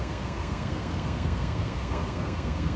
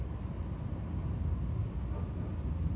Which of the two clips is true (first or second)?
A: second